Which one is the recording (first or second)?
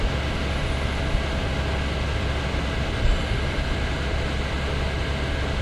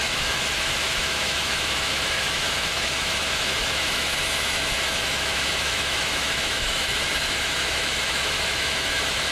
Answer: first